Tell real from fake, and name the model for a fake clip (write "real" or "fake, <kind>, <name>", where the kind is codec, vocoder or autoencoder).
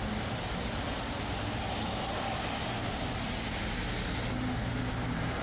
real